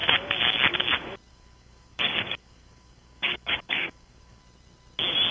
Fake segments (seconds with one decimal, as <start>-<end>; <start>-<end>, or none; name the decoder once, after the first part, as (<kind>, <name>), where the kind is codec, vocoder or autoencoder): 1.3-4.4 (codec, DAC)